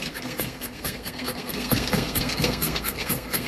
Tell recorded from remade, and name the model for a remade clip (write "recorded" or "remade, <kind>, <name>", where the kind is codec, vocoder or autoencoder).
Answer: remade, codec, SNAC